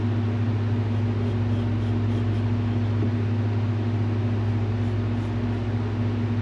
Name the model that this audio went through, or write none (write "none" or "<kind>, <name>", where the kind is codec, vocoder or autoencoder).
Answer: none